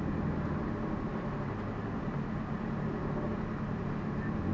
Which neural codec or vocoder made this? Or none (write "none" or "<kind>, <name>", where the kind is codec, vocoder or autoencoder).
none